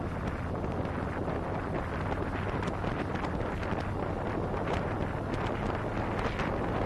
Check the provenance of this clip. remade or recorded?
recorded